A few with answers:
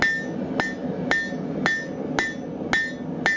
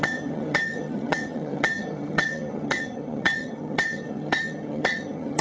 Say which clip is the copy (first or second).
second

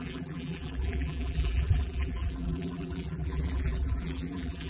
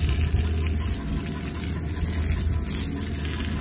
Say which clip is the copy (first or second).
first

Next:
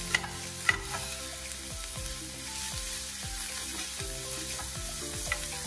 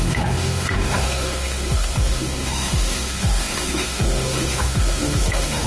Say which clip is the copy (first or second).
second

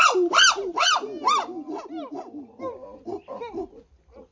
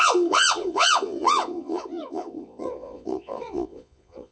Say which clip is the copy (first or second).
second